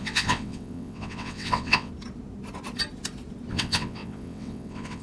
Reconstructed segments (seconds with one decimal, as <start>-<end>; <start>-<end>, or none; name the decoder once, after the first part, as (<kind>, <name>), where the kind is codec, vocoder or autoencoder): 0.0-1.9 (vocoder, WaveNeXt); 3.5-5.0